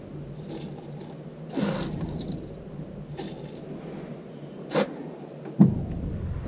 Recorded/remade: recorded